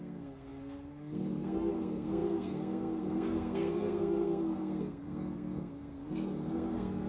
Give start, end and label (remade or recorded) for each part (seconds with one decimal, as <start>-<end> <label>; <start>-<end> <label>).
0.0-7.1 remade